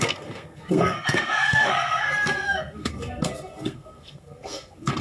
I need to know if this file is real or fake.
fake